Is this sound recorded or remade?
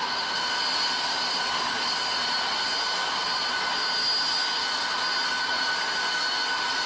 recorded